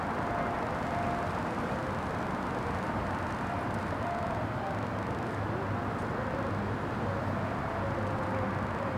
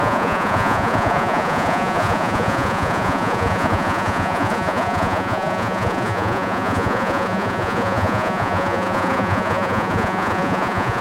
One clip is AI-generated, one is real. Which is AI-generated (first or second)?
second